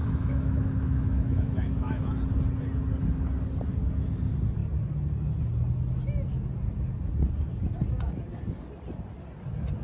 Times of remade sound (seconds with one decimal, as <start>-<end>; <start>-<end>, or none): 0.0-2.1